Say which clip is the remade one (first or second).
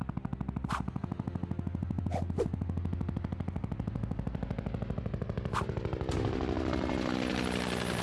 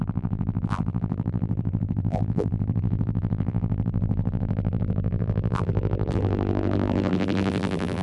second